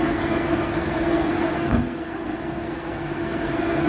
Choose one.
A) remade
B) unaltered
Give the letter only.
A